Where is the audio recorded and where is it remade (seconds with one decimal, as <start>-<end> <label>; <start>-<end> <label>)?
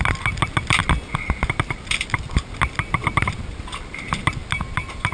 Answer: 0.0-5.1 recorded